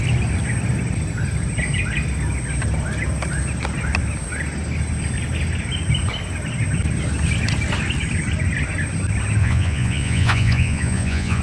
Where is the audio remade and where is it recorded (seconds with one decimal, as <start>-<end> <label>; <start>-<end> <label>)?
0.0-9.4 recorded; 9.4-11.4 remade